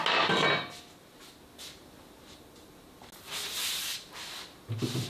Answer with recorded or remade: recorded